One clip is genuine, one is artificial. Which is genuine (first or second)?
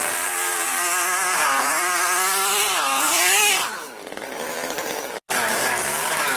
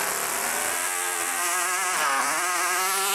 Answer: second